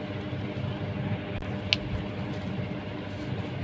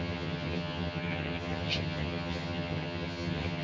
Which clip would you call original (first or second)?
first